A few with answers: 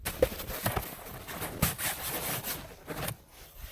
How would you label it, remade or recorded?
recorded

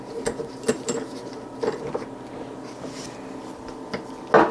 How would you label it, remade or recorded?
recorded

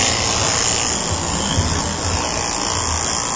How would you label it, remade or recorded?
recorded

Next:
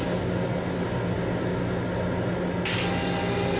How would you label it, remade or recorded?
recorded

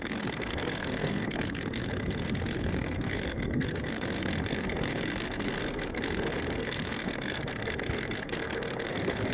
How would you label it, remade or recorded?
remade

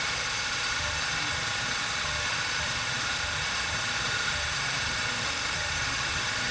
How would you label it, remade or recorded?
remade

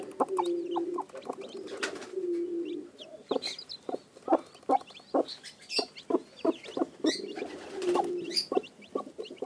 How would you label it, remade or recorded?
recorded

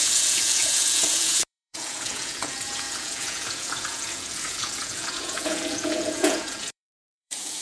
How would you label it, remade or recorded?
remade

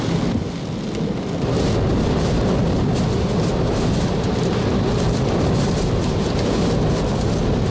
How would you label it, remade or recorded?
recorded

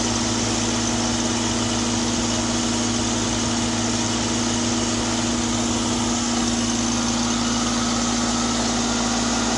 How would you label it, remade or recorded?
recorded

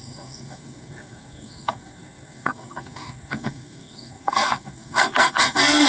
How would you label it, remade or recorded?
remade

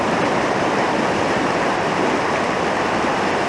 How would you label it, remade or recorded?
recorded